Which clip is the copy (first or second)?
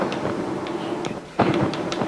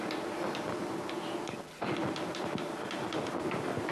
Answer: first